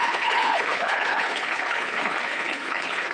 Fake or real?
fake